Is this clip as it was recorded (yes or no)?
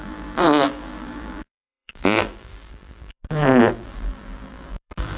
no